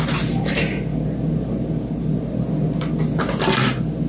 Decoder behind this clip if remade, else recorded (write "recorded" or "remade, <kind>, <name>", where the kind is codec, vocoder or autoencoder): recorded